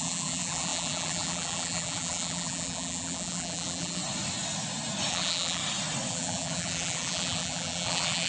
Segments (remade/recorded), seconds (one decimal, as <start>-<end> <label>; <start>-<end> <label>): 0.0-4.0 remade; 4.0-5.1 recorded; 5.1-5.6 remade; 5.6-6.1 recorded; 6.1-8.3 remade